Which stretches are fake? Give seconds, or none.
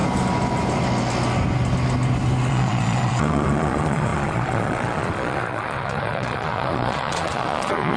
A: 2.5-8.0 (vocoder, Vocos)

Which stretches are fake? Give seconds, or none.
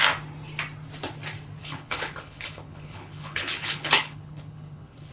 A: 1.6-5.1 (codec, HILCodec)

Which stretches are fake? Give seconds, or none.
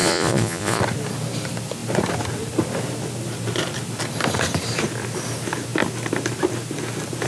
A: 0.0-0.8 (vocoder, Vocos)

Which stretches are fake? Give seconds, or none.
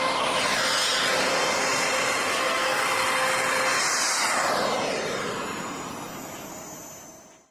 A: 2.3-2.8 (codec, SNAC)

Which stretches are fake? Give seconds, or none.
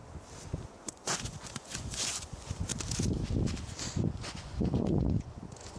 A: 0.7-2.7 (vocoder, Vocos); 3.8-5.8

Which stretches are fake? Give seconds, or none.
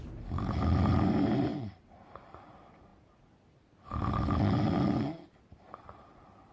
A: 0.0-2.9 (vocoder, BigVGAN v2); 6.1-6.5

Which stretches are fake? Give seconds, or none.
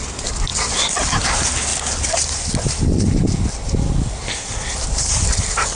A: 0.5-1.1 (vocoder, BigVGAN v2)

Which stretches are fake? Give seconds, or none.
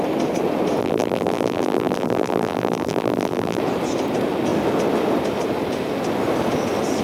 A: 0.8-3.6 (vocoder, BigVGAN v2)